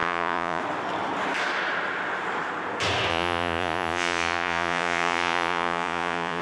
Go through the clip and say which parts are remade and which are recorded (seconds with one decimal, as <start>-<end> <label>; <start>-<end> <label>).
0.0-0.6 remade; 0.6-3.1 recorded; 3.1-6.4 remade